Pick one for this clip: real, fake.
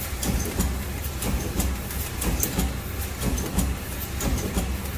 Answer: real